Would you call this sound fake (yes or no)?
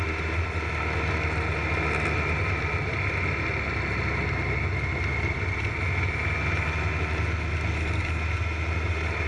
no